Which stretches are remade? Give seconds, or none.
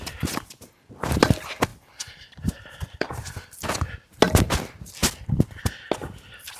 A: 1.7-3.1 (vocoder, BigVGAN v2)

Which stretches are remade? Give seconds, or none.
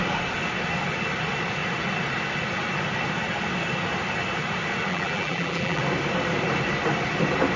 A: 4.9-5.8 (vocoder, BigVGAN v2)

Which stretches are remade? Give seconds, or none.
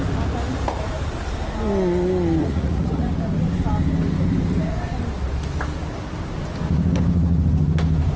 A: 2.4-3.1 (vocoder, Vocos)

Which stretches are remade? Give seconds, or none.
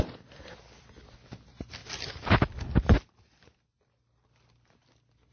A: none